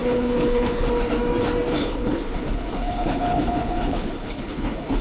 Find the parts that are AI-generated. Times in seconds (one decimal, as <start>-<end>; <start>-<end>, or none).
0.0-0.9; 1.8-5.0